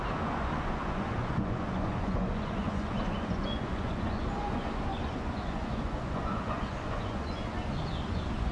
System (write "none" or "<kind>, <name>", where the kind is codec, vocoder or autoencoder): vocoder, Vocos